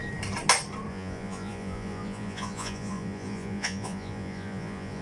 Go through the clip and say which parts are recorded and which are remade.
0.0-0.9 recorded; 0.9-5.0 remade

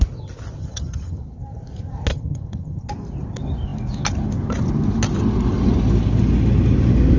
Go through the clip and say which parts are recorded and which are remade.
0.0-0.6 recorded; 0.6-1.2 remade; 1.2-2.1 recorded; 2.1-2.9 remade; 2.9-7.2 recorded

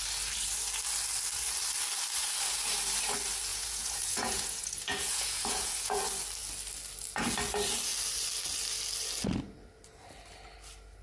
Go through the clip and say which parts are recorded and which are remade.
0.0-3.5 recorded; 3.5-6.0 remade; 6.0-11.0 recorded

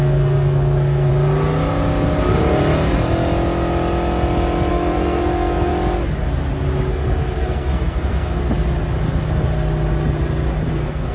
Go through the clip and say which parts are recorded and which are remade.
0.0-1.1 remade; 1.1-4.7 recorded; 4.7-5.7 remade; 5.7-6.9 recorded; 6.9-8.4 remade; 8.4-10.7 recorded; 10.7-11.1 remade

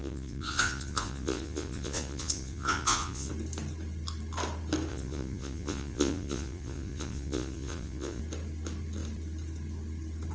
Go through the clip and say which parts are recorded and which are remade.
0.0-3.3 remade; 3.3-4.9 recorded; 4.9-8.2 remade; 8.2-10.3 recorded

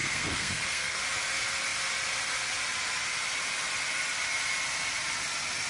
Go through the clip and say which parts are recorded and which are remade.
0.0-1.0 remade; 1.0-5.7 recorded